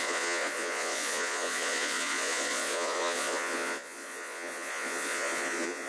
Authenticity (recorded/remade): remade